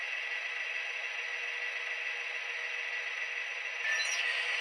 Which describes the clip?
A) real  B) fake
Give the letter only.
A